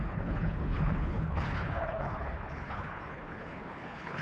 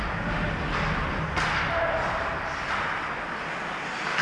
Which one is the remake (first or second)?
first